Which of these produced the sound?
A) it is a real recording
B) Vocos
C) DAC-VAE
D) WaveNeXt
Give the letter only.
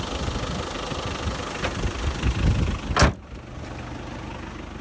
A